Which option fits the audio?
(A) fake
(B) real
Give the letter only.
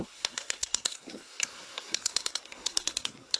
A